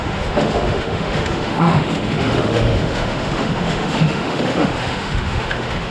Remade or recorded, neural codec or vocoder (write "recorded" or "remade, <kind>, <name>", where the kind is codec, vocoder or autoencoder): remade, autoencoder, DAC-VAE